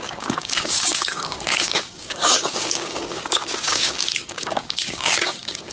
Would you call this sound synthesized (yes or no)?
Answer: yes